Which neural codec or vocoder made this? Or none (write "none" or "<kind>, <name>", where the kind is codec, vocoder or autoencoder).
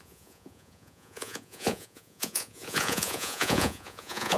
vocoder, Vocos